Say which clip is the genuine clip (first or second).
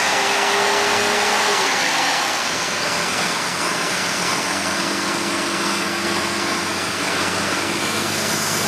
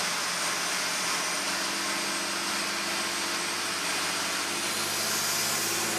second